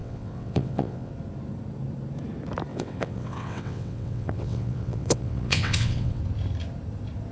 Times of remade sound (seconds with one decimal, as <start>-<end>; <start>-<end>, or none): 0.0-1.1; 2.7-6.2